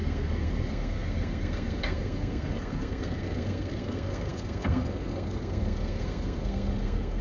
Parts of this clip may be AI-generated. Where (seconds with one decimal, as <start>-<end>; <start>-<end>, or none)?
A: 0.0-7.2